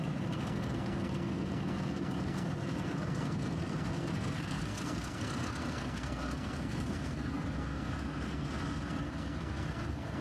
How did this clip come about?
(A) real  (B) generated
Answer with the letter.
B